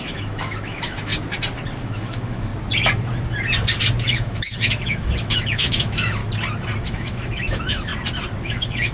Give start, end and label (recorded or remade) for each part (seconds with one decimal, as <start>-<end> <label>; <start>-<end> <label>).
0.0-1.1 remade; 1.1-1.8 recorded; 1.8-2.5 remade; 2.5-4.0 recorded; 4.0-6.2 remade; 6.2-6.8 recorded; 6.8-7.9 remade; 7.9-8.4 recorded; 8.4-8.9 remade

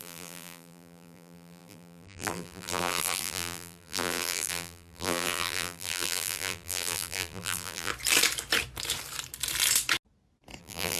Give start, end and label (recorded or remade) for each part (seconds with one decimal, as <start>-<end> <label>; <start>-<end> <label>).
0.0-7.9 remade; 7.9-10.6 recorded; 10.6-11.0 remade